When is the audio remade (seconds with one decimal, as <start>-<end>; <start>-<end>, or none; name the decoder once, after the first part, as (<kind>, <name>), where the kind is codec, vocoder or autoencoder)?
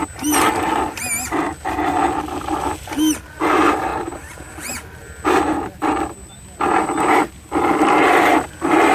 none